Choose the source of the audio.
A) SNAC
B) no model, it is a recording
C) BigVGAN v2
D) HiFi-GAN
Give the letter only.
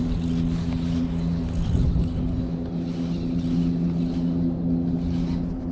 B